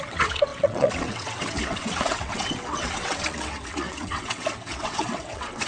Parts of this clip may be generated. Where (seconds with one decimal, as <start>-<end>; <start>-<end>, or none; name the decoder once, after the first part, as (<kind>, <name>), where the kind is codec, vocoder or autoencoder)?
0.0-5.7 (vocoder, WaveNeXt)